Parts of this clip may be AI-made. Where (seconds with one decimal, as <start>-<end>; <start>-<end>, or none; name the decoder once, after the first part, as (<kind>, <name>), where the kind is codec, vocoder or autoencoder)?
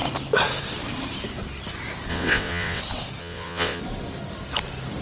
2.1-2.8 (vocoder, WaveNeXt); 3.2-3.8